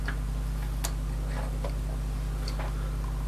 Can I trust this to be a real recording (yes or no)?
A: yes